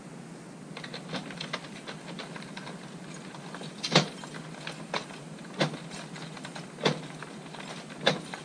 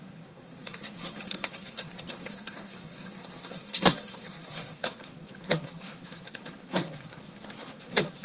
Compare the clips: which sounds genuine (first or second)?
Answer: first